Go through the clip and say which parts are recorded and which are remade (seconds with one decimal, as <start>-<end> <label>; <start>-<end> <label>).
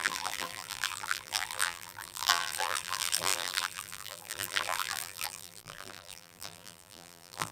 0.0-7.5 remade